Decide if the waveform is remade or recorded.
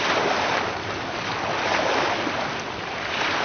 recorded